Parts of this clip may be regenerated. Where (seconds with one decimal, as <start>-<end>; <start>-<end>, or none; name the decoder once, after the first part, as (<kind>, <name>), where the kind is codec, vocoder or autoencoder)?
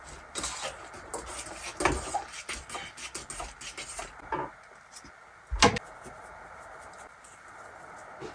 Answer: none